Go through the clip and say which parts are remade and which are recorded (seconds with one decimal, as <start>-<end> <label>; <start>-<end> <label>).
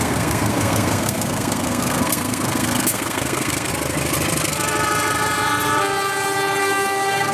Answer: 0.0-3.7 remade; 3.7-6.6 recorded; 6.6-7.3 remade